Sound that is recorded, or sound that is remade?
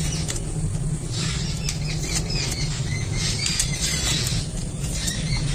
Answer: recorded